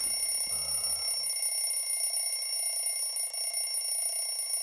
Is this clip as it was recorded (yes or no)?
yes